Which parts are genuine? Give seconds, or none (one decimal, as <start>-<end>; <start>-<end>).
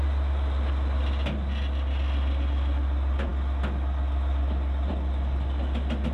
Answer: 0.0-6.1